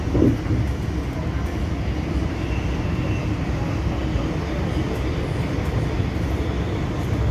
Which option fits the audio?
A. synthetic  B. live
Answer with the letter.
B